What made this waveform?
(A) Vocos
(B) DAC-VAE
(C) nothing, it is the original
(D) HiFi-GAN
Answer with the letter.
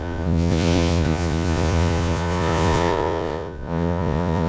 A